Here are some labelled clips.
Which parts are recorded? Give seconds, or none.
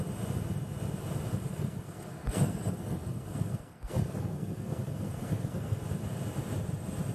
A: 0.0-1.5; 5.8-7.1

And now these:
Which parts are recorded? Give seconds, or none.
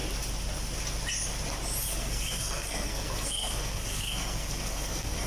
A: 0.0-1.9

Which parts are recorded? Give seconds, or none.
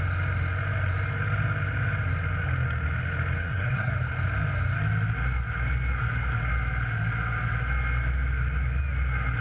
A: 0.0-3.4; 3.9-9.4